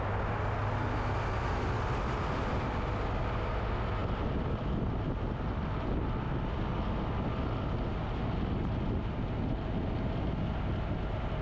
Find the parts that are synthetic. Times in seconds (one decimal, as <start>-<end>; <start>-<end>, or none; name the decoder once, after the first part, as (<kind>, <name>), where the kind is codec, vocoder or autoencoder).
none